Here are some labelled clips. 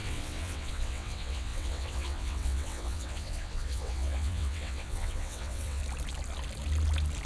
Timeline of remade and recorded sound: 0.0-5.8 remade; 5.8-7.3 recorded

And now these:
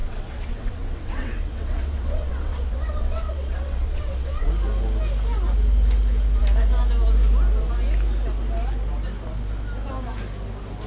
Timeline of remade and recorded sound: 0.0-4.5 remade; 4.5-10.9 recorded

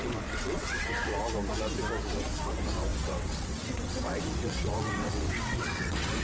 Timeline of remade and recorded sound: 0.0-1.1 remade; 1.1-2.1 recorded; 2.1-6.2 remade

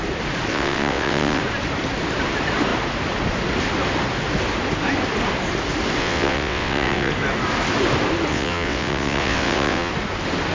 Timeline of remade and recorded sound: 0.0-0.5 recorded; 0.5-1.4 remade; 1.4-6.0 recorded; 6.0-7.1 remade; 7.1-8.3 recorded; 8.3-9.9 remade; 9.9-10.5 recorded

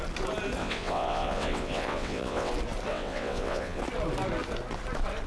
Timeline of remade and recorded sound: 0.0-0.6 recorded; 0.6-2.5 remade; 2.5-2.9 recorded; 2.9-3.8 remade; 3.8-5.3 recorded

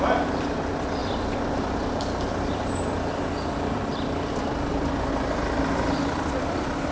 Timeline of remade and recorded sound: 0.0-6.9 recorded